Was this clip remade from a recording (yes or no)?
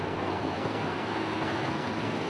yes